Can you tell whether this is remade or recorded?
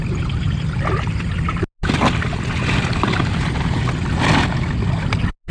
recorded